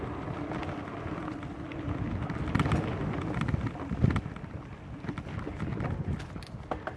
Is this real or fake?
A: real